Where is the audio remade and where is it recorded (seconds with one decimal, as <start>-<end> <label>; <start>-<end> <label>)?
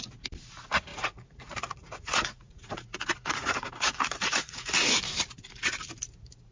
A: 0.0-0.9 recorded; 0.9-4.7 remade; 4.7-6.5 recorded